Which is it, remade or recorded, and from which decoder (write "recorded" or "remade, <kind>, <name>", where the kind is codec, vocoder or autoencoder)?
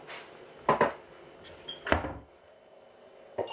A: recorded